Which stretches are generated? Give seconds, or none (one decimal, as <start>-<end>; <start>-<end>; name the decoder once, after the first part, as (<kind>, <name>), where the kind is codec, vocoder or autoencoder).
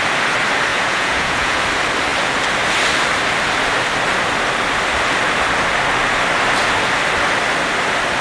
0.7-1.6 (vocoder, Vocos)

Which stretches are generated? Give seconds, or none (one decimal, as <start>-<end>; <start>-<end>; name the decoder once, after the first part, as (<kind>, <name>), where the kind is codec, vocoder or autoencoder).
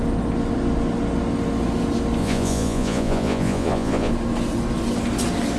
2.2-4.1 (vocoder, Vocos)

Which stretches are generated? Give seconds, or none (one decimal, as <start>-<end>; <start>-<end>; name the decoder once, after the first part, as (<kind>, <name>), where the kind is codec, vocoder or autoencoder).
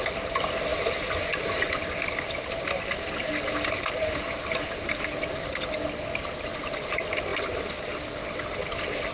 none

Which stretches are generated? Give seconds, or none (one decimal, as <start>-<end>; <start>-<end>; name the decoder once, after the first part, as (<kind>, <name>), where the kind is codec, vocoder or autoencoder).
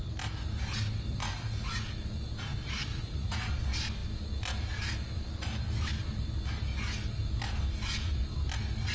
1.1-1.7 (vocoder, Vocos); 2.9-3.5